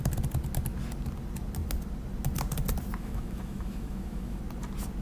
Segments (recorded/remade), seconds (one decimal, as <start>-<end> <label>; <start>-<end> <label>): 0.0-3.0 recorded; 3.0-4.4 remade; 4.4-5.0 recorded